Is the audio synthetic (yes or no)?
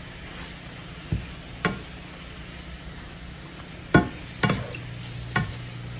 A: no